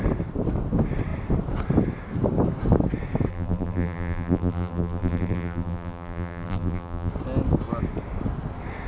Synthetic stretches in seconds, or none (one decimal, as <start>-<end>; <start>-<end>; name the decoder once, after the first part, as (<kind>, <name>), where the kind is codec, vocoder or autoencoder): 3.3-7.1 (vocoder, BigVGAN v2)